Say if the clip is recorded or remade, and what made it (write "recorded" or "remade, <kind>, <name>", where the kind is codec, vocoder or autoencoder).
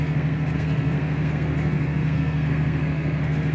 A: remade, codec, SNAC